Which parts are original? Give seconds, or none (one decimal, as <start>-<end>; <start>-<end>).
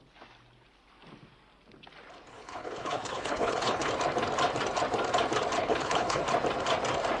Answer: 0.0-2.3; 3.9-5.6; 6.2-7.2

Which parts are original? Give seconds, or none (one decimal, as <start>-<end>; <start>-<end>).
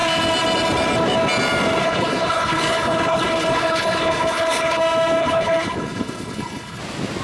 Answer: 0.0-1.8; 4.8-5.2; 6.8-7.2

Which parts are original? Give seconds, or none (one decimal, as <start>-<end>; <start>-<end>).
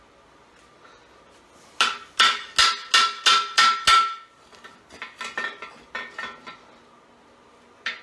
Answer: 0.0-8.0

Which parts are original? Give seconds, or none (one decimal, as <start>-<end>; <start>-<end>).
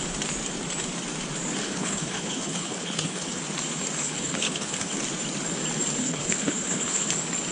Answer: 0.0-1.6; 3.4-4.0; 4.9-6.0; 7.1-7.5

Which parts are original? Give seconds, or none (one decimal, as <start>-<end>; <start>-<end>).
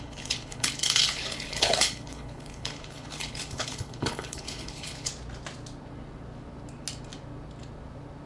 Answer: 5.1-8.3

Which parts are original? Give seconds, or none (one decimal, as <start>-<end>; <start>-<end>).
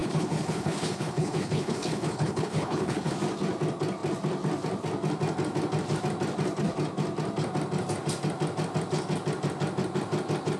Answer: 3.1-10.6